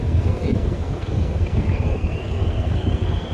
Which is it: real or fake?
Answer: fake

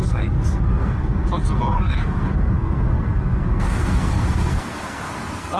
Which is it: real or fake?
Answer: fake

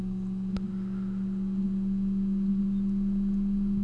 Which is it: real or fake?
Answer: real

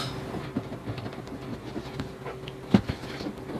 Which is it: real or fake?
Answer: real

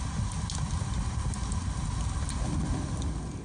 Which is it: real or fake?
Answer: real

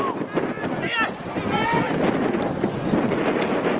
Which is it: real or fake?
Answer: real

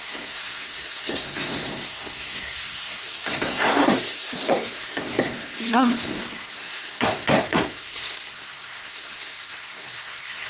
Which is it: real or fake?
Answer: fake